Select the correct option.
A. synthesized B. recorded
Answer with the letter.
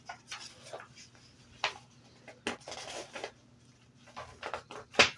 B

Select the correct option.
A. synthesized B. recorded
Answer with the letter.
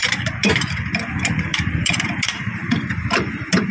A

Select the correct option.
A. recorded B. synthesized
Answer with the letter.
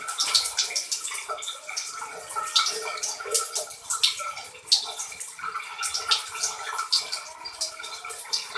A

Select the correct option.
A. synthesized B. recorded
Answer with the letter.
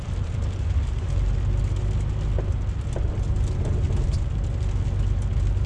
B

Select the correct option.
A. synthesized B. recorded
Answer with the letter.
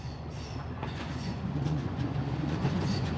A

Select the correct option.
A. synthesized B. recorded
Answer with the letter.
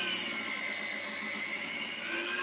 B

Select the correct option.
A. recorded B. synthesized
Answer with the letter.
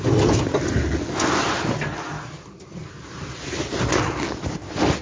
A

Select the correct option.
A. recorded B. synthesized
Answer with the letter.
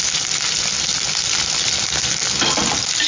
A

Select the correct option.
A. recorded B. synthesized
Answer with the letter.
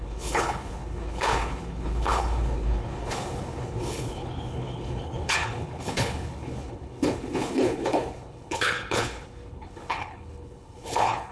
B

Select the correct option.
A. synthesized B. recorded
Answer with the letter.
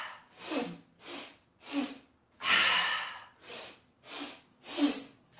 B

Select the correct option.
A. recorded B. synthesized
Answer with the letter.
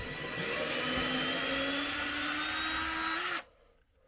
A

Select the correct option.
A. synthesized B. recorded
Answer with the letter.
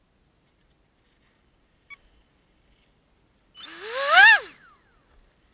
B